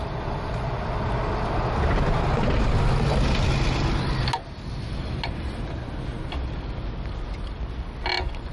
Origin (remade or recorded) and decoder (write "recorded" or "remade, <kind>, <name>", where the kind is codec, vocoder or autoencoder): recorded